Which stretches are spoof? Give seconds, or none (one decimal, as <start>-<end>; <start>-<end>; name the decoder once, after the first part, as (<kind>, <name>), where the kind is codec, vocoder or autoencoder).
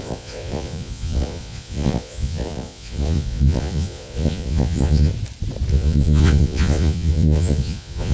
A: 0.0-5.1 (vocoder, Vocos); 5.7-8.1